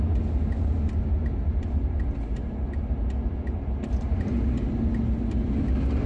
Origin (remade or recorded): recorded